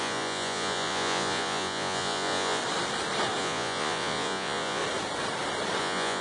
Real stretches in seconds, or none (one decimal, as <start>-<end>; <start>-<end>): 2.6-3.4; 4.8-5.8